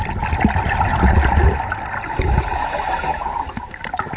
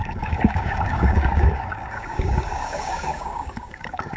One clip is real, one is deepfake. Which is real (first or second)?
first